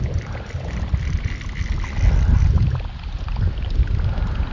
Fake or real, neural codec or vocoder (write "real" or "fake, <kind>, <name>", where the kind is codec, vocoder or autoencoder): real